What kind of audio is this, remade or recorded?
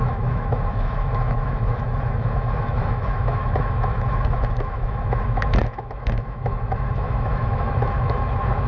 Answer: remade